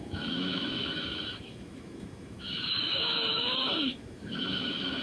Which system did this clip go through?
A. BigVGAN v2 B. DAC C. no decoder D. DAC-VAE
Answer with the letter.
D